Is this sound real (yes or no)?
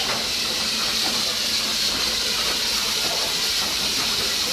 yes